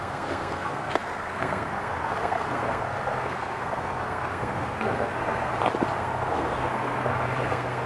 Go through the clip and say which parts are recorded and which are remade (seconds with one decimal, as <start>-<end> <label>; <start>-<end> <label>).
0.0-5.5 remade; 5.5-6.0 recorded; 6.0-7.9 remade